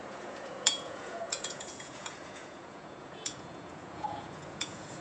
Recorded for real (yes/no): no